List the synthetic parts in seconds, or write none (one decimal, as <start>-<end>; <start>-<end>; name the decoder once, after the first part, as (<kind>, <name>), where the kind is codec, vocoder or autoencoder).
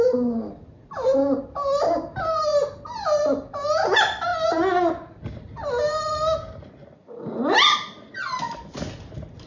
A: none